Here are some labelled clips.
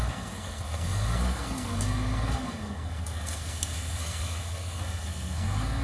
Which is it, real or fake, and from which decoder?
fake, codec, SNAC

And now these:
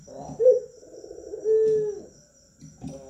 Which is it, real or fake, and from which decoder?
real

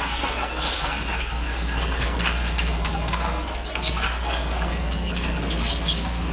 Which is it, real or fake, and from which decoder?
fake, codec, SNAC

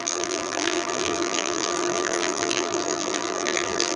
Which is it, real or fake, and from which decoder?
fake, vocoder, BigVGAN v2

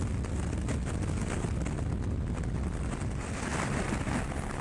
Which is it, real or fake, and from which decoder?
real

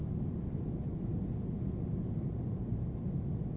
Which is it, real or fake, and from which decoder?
real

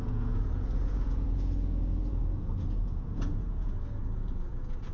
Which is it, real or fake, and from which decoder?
fake, vocoder, Vocos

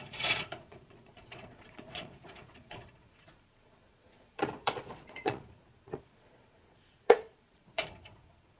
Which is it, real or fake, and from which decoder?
fake, vocoder, Vocos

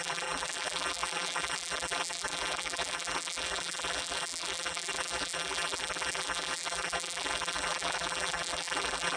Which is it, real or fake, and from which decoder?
fake, vocoder, BigVGAN v2